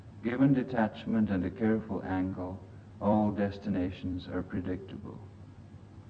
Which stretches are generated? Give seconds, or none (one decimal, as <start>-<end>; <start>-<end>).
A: 0.0-6.1

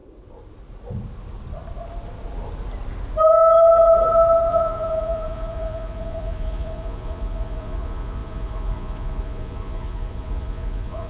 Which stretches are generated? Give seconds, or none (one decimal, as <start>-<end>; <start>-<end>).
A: 4.5-11.1

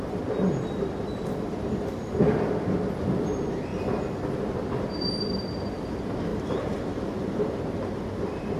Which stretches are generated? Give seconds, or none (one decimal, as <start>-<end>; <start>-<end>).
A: 6.3-7.6

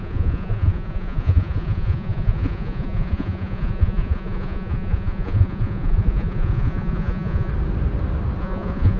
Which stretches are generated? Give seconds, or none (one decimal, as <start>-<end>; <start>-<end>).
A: 0.0-7.5; 8.4-9.0

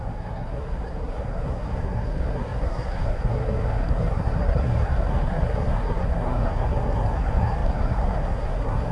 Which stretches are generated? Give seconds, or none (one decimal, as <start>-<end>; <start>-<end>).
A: 0.0-8.9